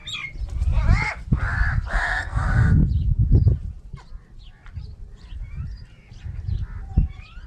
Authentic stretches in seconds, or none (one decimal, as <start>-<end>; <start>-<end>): 0.0-1.9; 2.8-7.5